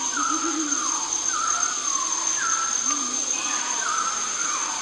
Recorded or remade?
recorded